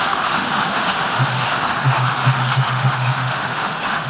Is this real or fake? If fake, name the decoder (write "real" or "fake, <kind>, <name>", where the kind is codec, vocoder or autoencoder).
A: fake, autoencoder, DAC-VAE